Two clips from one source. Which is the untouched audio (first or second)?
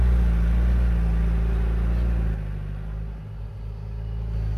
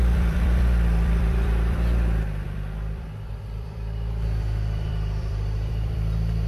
first